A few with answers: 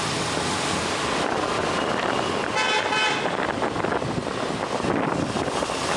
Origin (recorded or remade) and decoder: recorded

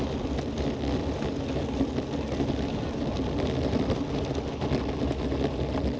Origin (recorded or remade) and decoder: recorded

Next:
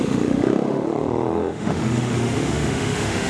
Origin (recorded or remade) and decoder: remade, autoencoder, DAC-VAE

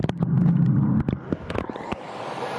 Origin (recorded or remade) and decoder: recorded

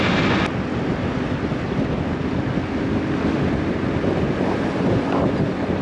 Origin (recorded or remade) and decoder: recorded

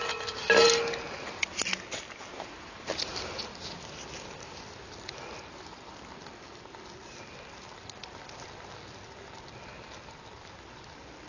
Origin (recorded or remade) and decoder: recorded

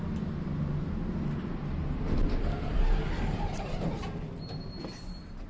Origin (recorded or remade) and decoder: recorded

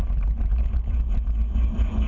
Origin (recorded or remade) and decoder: recorded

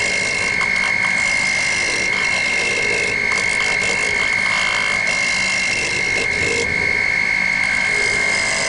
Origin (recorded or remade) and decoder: recorded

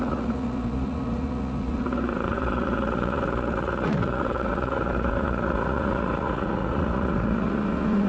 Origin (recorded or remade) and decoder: remade, vocoder, Vocos